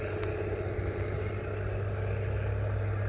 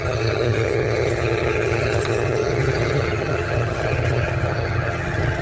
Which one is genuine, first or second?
first